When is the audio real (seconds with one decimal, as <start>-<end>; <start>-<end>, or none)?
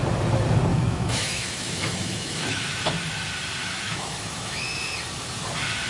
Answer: 0.0-0.7; 2.9-3.6; 4.6-5.9